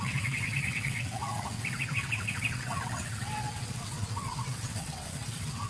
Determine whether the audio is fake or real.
fake